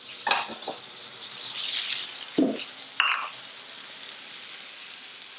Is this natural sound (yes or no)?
yes